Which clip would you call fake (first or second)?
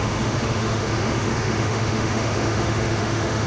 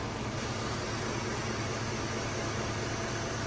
first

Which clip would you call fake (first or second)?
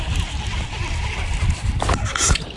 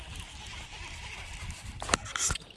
first